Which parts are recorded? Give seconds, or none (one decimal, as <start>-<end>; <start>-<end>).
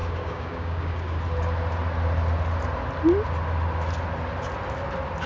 1.2-5.3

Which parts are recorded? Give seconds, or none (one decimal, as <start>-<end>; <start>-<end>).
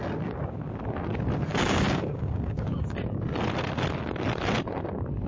0.0-1.5; 3.2-5.3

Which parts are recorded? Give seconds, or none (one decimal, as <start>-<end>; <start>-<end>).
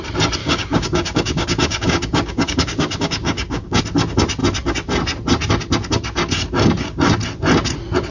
0.0-0.4; 3.8-8.1